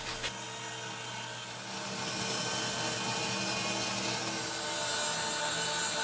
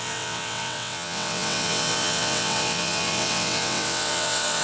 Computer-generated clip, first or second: second